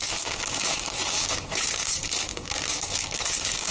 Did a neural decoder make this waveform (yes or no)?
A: yes